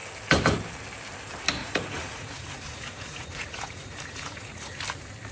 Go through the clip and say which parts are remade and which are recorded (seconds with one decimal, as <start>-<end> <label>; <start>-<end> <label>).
0.0-1.6 recorded; 1.6-4.8 remade; 4.8-5.3 recorded